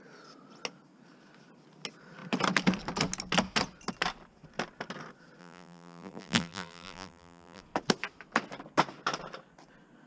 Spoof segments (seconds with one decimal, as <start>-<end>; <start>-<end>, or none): 5.4-7.6